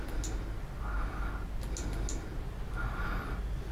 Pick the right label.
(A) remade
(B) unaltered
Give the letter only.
B